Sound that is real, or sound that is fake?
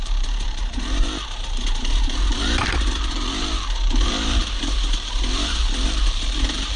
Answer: fake